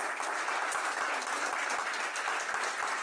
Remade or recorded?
recorded